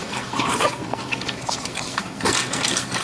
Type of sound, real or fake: fake